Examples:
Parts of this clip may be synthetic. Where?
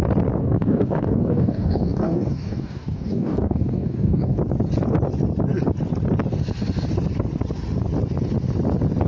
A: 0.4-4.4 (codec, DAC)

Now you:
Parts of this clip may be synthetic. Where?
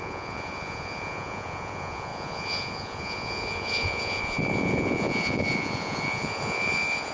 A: 0.0-7.1 (vocoder, Vocos)